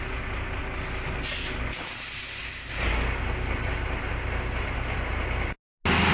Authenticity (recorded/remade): recorded